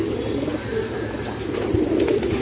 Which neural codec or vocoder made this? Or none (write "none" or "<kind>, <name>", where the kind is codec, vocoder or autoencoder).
vocoder, BigVGAN v2